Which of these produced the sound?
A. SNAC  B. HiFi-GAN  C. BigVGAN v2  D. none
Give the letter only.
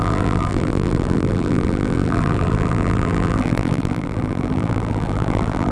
C